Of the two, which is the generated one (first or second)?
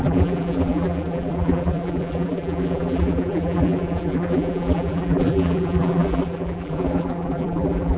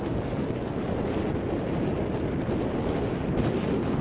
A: first